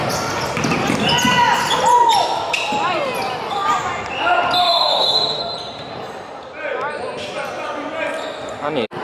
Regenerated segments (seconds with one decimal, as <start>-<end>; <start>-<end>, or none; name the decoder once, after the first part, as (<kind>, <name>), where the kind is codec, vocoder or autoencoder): 4.6-5.4 (autoencoder, DAC-VAE)